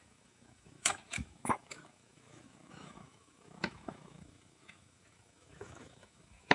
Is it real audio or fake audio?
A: fake